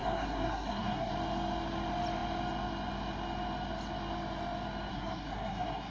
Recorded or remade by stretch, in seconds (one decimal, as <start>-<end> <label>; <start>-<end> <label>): 0.0-1.1 remade; 1.1-4.9 recorded; 4.9-5.9 remade